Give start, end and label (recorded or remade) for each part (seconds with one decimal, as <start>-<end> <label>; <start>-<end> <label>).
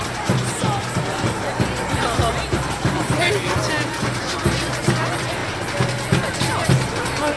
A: 0.0-7.4 recorded